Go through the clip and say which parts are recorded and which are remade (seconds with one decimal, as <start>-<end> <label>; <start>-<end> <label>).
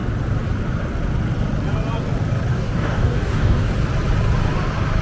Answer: 0.0-2.5 recorded; 2.5-3.7 remade; 3.7-5.0 recorded